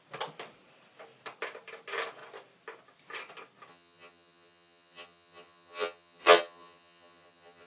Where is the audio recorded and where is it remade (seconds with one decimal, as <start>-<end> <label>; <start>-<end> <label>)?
0.0-3.7 recorded; 3.7-7.7 remade